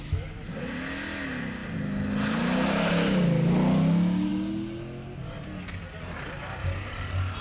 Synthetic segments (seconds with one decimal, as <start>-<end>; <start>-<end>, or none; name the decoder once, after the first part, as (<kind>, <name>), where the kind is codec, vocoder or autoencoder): none

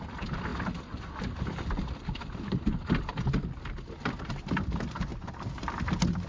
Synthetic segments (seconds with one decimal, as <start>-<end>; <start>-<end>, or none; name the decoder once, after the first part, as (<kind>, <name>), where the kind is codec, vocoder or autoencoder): none